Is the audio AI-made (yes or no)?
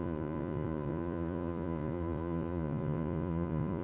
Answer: yes